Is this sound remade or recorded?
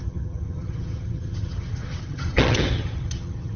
remade